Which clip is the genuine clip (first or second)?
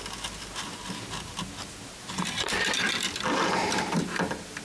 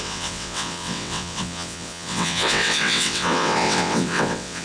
first